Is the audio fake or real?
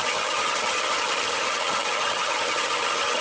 fake